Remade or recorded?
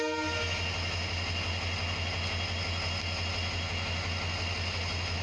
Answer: recorded